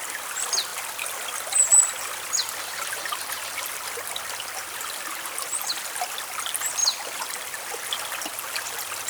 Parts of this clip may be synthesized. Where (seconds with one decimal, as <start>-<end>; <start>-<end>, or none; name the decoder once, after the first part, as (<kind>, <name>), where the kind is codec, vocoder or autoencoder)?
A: none